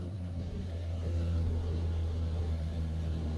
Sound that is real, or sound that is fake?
fake